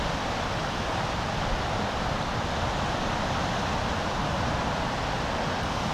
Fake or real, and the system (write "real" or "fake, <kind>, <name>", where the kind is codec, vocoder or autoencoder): real